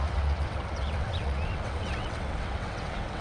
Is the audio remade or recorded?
remade